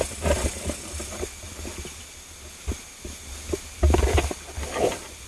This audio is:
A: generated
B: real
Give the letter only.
B